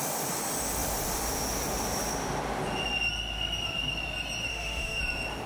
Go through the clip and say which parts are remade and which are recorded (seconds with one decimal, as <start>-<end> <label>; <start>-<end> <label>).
0.0-4.5 recorded; 4.5-5.0 remade; 5.0-5.5 recorded